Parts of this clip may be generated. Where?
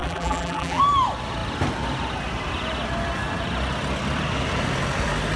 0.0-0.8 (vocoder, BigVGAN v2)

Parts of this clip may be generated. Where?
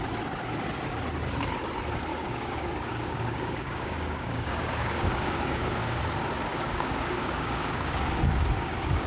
2.1-6.0 (codec, DAC); 6.5-9.1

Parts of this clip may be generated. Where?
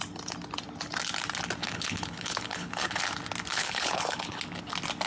1.6-3.0 (codec, HILCodec); 3.5-4.4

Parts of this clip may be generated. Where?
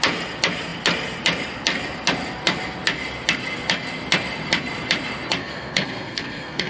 5.4-6.7 (codec, SNAC)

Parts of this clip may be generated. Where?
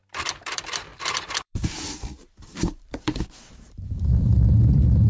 0.0-5.1 (vocoder, BigVGAN v2)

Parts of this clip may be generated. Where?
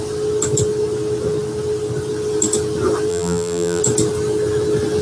3.1-3.8 (vocoder, BigVGAN v2)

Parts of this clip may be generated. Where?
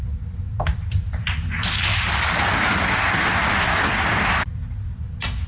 none